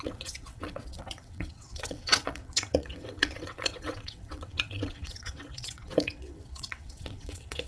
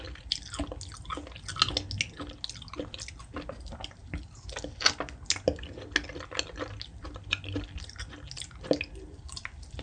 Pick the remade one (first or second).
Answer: first